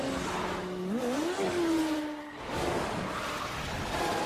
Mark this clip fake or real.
real